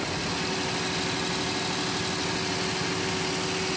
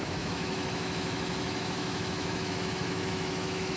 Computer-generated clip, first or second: second